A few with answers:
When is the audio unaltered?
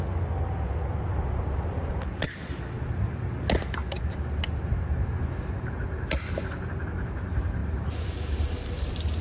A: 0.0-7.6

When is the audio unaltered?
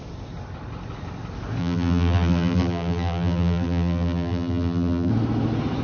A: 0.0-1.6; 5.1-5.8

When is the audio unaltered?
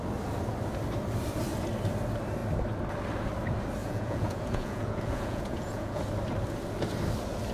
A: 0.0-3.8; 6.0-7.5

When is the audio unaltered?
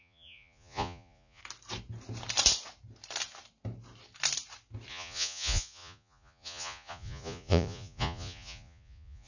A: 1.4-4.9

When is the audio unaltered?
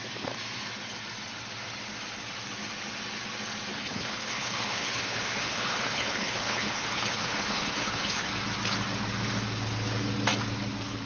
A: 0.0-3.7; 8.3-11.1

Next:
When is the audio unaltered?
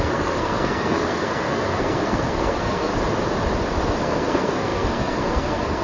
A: 2.9-4.0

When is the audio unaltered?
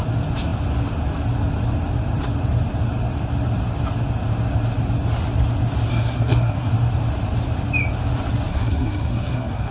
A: 0.0-5.9; 6.7-8.5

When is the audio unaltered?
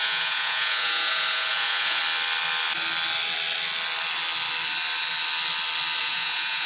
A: 2.0-6.0